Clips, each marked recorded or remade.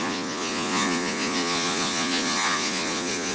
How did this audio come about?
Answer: remade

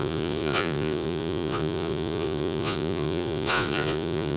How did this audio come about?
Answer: remade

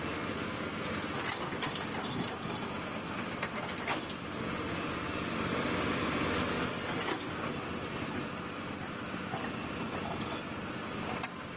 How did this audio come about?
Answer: recorded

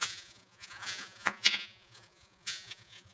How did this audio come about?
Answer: remade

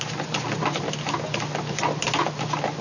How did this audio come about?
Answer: recorded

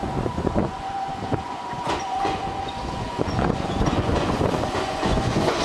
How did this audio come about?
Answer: remade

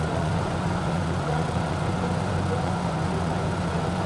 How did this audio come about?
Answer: remade